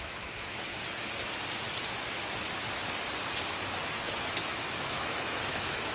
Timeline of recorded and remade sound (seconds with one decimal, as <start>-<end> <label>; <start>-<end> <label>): 0.0-0.7 remade; 0.7-4.2 recorded; 4.2-5.9 remade